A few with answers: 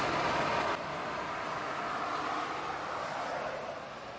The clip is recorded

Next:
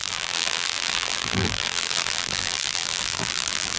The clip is remade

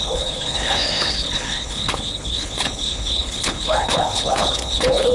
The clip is remade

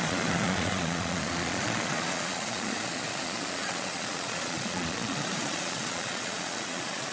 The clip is remade